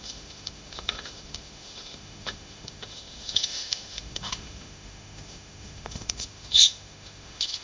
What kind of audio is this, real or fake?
fake